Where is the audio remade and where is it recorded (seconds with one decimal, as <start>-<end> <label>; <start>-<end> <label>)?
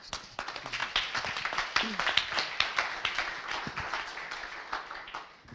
0.0-5.5 recorded